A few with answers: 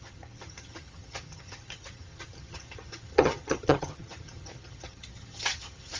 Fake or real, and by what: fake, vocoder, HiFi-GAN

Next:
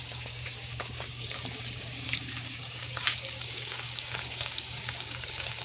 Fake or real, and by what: fake, codec, DAC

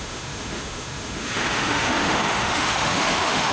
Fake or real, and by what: fake, autoencoder, DAC-VAE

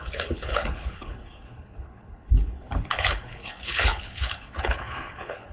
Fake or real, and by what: fake, codec, HILCodec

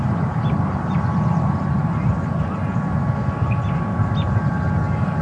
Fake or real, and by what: real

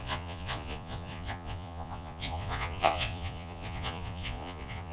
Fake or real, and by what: fake, vocoder, Vocos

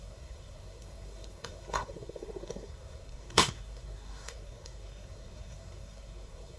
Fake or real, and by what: fake, codec, SNAC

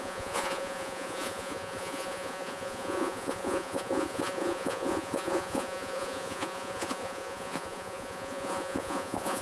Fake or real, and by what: fake, vocoder, Vocos